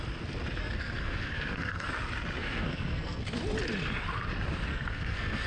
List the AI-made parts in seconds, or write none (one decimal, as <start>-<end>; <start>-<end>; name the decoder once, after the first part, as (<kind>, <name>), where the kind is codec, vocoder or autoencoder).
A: 0.6-1.9 (codec, SNAC); 2.4-3.2; 4.7-5.5